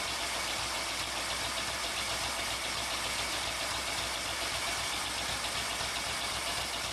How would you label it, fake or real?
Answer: real